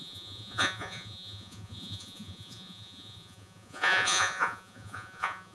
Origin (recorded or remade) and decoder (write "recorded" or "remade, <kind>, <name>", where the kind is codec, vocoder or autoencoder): remade, vocoder, Vocos